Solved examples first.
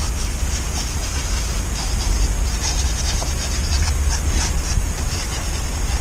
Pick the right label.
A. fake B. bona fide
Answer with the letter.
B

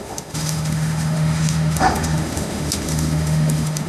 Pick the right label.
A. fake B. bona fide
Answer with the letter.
A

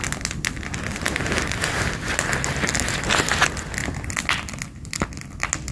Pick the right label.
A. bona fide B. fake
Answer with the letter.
A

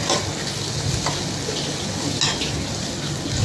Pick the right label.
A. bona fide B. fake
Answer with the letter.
A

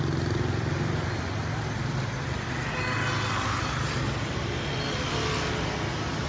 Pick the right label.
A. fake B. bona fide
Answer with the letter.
B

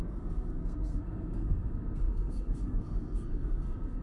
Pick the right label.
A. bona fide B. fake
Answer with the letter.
B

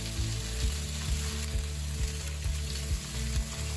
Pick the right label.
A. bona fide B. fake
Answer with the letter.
A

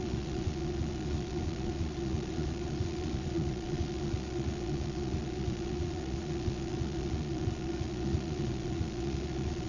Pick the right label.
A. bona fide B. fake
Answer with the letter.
B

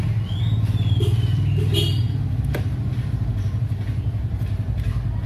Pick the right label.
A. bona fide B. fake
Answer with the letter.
A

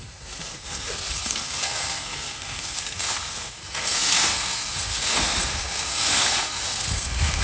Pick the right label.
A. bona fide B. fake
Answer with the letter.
B